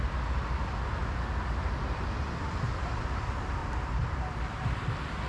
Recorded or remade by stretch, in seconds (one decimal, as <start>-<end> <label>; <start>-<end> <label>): 0.0-3.6 recorded; 3.6-5.3 remade

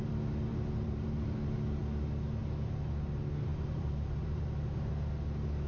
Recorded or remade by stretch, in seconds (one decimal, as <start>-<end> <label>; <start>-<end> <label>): 0.0-0.5 recorded; 0.5-1.4 remade; 1.4-3.5 recorded; 3.5-4.4 remade; 4.4-5.7 recorded

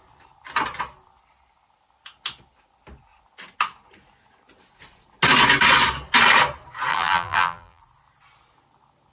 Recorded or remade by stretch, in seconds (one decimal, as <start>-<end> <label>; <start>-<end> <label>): 0.0-6.9 recorded; 6.9-7.8 remade; 7.8-9.1 recorded

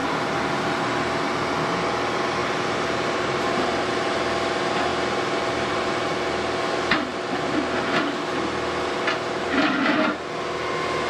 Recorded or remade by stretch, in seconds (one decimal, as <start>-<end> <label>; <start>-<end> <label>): 0.0-0.8 remade; 0.8-2.4 recorded; 2.4-3.9 remade; 3.9-11.1 recorded

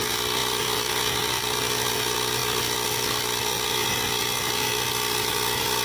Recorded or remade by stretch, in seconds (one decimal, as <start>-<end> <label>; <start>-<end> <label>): 0.0-5.8 recorded